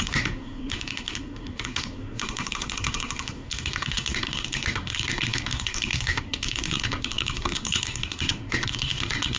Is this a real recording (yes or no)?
no